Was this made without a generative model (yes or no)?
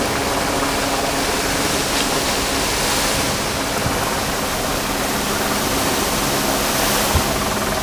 yes